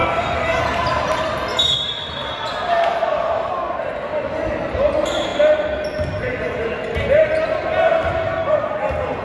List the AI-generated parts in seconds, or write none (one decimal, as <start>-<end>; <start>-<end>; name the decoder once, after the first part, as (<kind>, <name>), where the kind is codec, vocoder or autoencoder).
0.0-0.6 (codec, SNAC)